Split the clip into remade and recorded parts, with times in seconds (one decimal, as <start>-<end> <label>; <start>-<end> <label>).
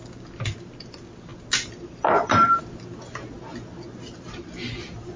0.0-5.2 recorded